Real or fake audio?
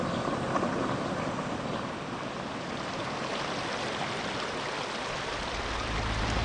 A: real